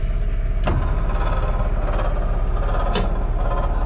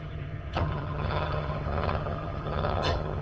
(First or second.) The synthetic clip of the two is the second